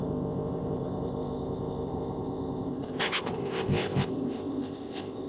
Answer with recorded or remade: remade